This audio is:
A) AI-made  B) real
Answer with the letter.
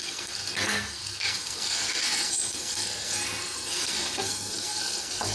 A